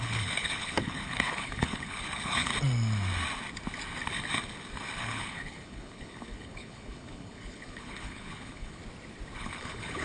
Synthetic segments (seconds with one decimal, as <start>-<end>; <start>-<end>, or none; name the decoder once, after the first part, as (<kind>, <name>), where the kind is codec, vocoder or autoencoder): 0.0-2.5 (codec, HILCodec); 5.0-8.8; 9.4-10.0